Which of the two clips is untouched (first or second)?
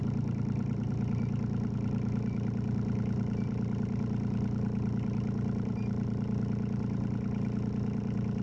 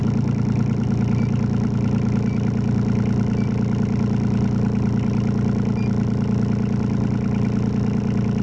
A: second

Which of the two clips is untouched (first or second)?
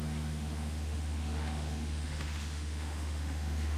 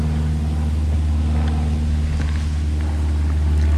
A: second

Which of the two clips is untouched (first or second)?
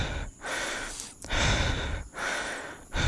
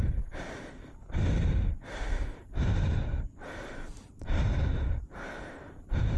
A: first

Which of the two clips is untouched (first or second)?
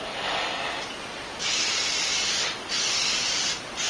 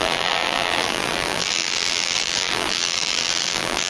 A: first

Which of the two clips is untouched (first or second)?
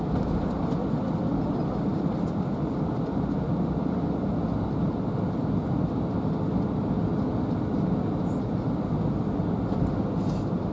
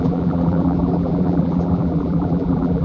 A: first